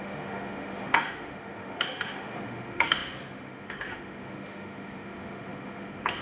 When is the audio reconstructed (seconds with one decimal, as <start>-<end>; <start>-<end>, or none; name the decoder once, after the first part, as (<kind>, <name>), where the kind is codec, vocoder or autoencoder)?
0.0-6.2 (autoencoder, DAC-VAE)